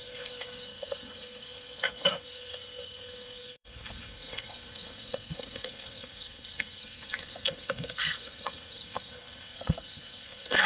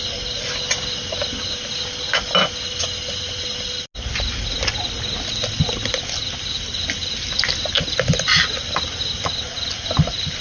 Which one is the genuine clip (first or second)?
second